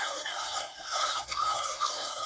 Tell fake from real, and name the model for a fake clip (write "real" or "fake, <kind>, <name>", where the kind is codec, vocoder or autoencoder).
fake, codec, SNAC